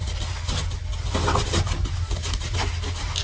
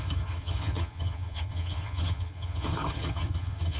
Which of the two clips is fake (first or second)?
second